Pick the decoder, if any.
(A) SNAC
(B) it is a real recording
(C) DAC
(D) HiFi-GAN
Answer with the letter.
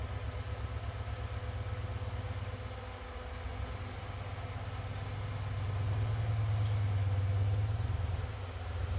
B